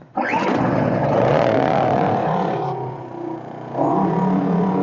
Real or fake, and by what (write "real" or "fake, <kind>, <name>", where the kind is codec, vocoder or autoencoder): fake, vocoder, Vocos